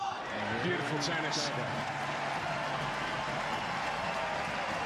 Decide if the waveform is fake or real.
real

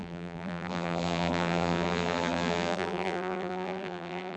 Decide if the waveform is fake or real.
fake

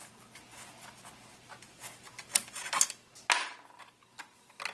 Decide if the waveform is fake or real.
real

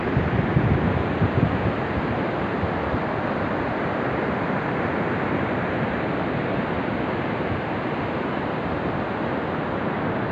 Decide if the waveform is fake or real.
real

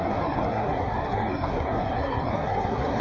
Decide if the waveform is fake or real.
fake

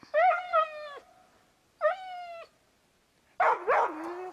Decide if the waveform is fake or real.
real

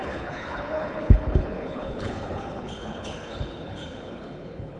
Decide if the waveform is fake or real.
fake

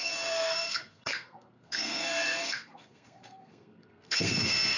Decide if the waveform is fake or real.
fake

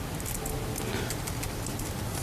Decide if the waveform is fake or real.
real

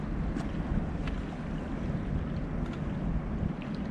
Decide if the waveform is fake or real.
real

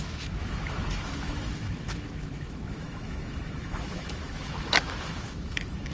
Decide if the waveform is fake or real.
fake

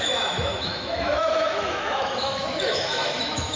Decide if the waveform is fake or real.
fake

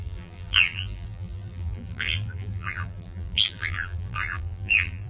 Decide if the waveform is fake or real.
fake